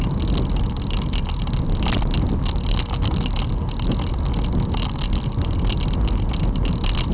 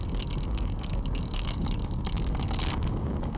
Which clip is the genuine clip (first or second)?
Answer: first